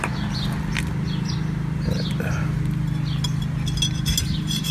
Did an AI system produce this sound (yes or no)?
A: no